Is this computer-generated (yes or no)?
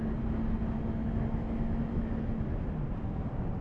no